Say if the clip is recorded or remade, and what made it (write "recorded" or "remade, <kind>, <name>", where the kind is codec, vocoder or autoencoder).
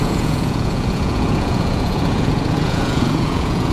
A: remade, vocoder, Vocos